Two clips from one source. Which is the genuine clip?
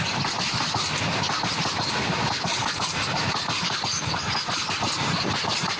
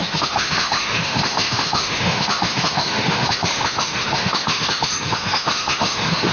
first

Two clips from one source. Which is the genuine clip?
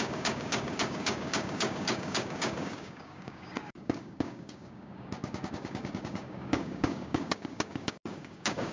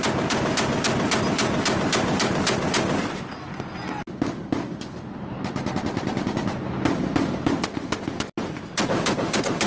second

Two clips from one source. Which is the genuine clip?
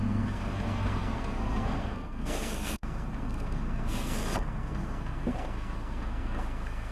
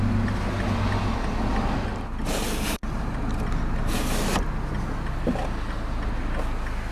second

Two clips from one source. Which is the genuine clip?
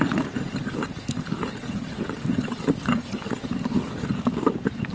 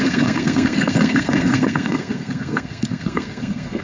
first